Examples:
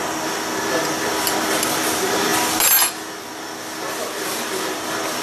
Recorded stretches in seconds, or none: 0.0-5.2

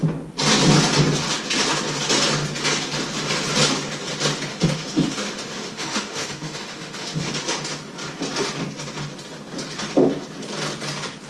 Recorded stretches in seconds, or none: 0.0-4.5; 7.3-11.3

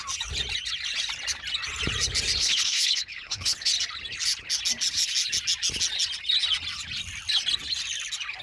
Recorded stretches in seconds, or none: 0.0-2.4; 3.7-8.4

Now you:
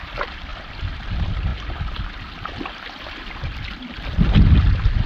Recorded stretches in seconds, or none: 0.0-5.1